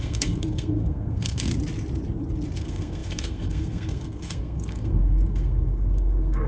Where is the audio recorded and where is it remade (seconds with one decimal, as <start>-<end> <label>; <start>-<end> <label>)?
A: 0.0-1.5 remade; 1.5-2.6 recorded; 2.6-6.5 remade

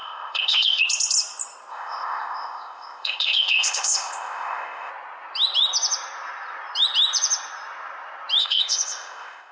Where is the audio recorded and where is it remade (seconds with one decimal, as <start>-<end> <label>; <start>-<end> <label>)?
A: 0.0-0.8 remade; 0.8-1.7 recorded; 1.7-4.9 remade; 4.9-8.4 recorded; 8.4-9.5 remade

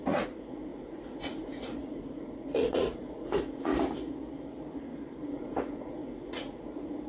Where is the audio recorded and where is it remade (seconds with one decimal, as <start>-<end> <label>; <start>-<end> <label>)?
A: 0.0-3.7 remade; 3.7-5.2 recorded; 5.2-7.1 remade

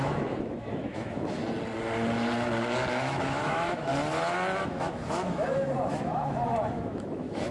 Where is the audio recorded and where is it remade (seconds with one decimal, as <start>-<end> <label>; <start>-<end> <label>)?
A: 0.0-1.4 remade; 1.4-2.9 recorded; 2.9-3.9 remade; 3.9-4.6 recorded; 4.6-7.5 remade

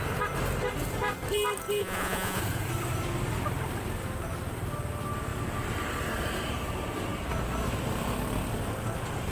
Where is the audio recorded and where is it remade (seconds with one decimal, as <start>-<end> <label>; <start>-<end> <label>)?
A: 0.0-1.8 recorded; 1.8-2.4 remade; 2.4-9.3 recorded

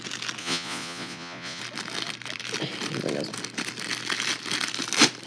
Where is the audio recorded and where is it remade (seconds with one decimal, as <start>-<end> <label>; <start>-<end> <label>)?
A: 0.0-0.4 recorded; 0.4-1.6 remade; 1.6-5.3 recorded

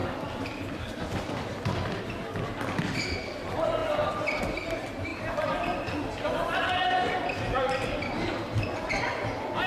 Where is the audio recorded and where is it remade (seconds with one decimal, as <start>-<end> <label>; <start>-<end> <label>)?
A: 0.0-2.0 remade; 2.0-9.7 recorded